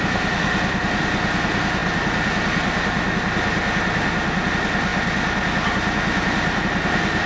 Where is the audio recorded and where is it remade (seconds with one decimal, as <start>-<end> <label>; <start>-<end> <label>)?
0.0-7.3 recorded